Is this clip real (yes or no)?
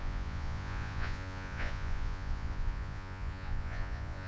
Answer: no